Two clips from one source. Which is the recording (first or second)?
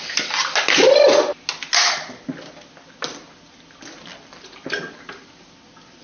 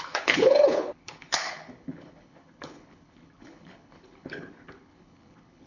first